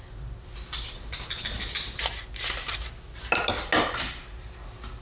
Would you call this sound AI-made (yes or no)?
no